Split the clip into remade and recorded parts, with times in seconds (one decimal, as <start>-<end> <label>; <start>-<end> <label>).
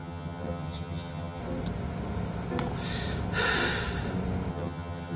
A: 0.0-1.4 remade; 1.4-4.5 recorded; 4.5-5.2 remade